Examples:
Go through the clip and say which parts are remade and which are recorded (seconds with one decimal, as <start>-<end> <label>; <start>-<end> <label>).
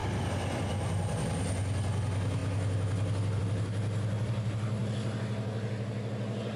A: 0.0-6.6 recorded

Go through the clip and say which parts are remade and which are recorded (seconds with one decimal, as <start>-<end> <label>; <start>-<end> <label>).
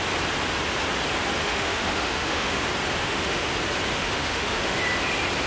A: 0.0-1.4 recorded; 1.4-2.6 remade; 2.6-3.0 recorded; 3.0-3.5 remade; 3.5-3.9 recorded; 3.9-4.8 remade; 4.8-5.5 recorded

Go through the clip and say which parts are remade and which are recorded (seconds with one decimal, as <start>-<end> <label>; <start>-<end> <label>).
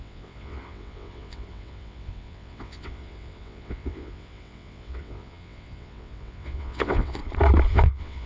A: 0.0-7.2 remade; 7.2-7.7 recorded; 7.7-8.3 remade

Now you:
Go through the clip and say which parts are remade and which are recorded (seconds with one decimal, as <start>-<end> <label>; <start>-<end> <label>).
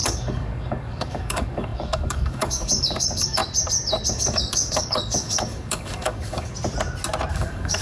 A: 0.0-3.4 remade; 3.4-4.1 recorded; 4.1-6.5 remade; 6.5-7.3 recorded; 7.3-7.8 remade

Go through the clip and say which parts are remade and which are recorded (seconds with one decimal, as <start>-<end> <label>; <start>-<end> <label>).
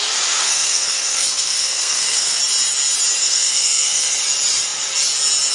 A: 0.0-0.4 recorded; 0.4-2.4 remade; 2.4-3.2 recorded; 3.2-4.1 remade; 4.1-5.5 recorded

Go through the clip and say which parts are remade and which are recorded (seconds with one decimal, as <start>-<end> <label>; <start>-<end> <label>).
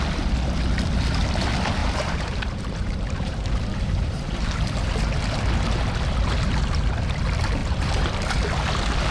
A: 0.0-1.8 recorded; 1.8-4.6 remade; 4.6-7.6 recorded; 7.6-8.2 remade; 8.2-9.1 recorded